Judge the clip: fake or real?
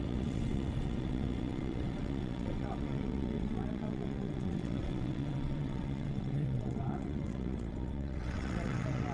fake